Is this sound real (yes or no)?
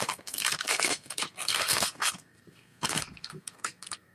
no